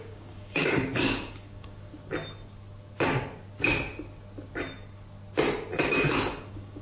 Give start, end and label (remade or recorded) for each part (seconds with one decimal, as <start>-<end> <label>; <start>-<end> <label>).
0.0-1.9 remade; 1.9-5.9 recorded; 5.9-6.8 remade